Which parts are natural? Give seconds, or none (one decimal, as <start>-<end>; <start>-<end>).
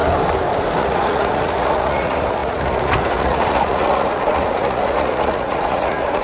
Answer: 0.0-0.8